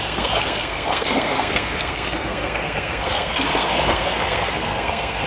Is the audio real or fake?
fake